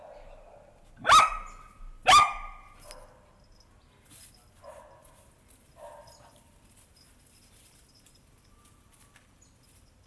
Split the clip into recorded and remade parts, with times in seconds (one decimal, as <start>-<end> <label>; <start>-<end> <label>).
0.0-10.1 recorded